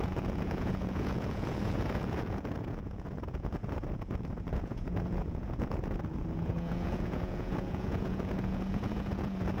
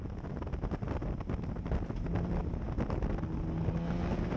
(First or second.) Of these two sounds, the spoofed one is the first